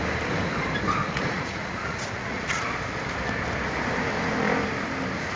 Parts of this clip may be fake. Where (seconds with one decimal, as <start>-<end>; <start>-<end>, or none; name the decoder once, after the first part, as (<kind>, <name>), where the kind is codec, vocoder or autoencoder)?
1.0-2.6 (vocoder, Vocos)